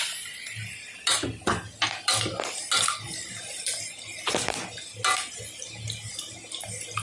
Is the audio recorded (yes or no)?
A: yes